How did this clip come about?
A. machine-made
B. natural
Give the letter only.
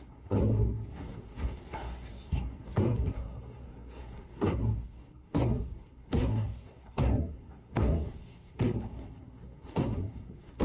A